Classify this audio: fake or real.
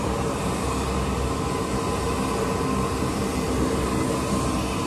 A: real